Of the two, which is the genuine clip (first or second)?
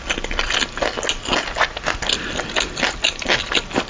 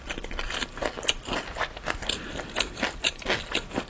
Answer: first